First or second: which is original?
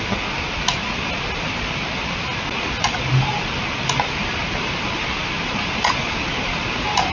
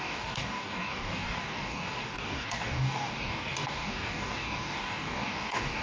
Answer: first